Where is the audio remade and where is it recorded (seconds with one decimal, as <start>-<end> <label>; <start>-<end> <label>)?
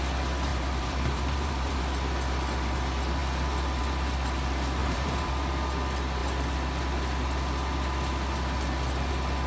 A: 0.0-0.5 recorded; 0.5-1.8 remade; 1.8-4.8 recorded; 4.8-5.3 remade; 5.3-9.5 recorded